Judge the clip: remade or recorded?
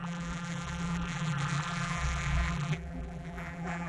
remade